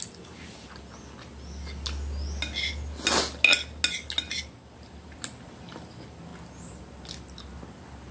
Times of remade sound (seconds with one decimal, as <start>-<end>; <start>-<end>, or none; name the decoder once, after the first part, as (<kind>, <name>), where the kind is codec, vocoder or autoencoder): none